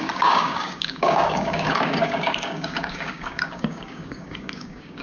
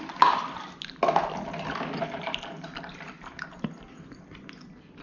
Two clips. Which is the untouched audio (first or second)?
second